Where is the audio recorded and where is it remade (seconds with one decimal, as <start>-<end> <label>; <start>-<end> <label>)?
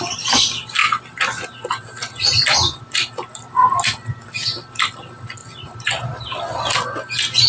0.0-5.4 recorded; 5.4-6.2 remade; 6.2-7.5 recorded